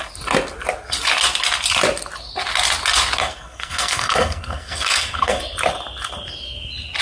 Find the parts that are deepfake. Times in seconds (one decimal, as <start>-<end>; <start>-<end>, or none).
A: 3.2-5.4